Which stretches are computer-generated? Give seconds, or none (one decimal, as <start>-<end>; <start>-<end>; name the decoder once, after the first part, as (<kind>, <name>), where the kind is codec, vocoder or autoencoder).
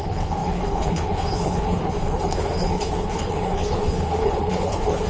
0.0-5.1 (codec, HILCodec)